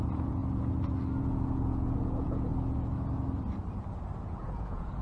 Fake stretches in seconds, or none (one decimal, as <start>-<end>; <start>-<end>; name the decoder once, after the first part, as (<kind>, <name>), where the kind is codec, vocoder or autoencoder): 0.0-0.4 (vocoder, Vocos); 1.2-2.5; 4.2-5.0